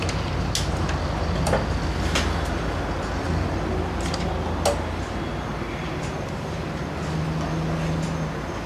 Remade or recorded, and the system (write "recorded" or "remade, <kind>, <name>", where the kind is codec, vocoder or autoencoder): recorded